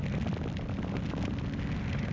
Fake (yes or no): no